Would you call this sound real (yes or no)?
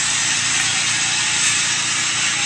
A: yes